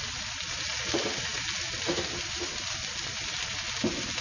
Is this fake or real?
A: real